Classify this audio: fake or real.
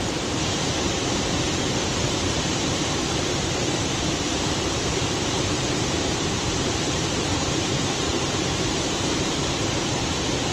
fake